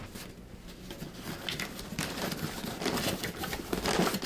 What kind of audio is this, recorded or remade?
recorded